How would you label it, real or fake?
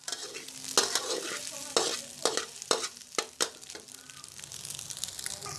real